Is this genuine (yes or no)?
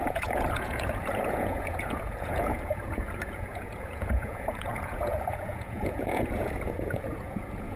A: no